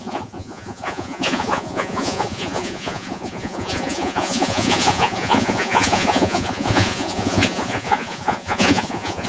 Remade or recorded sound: remade